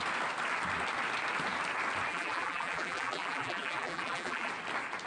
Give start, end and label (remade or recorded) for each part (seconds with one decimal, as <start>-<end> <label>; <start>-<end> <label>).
0.0-2.1 recorded; 2.1-4.5 remade; 4.5-5.1 recorded